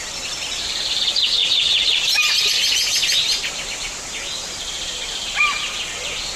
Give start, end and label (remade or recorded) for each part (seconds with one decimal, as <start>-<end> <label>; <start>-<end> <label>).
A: 0.0-1.4 recorded; 1.4-2.5 remade; 2.5-6.4 recorded